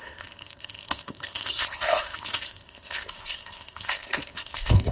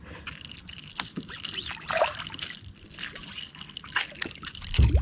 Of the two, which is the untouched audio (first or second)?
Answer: second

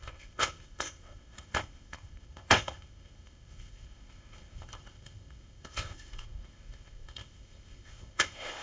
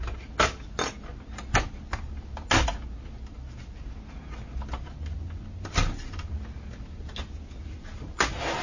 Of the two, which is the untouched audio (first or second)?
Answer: second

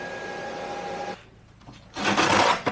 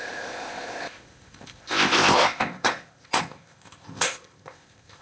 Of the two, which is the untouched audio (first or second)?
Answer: first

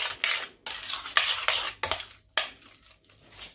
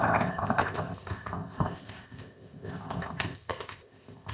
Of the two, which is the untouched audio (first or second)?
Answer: first